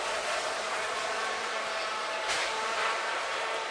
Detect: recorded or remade recorded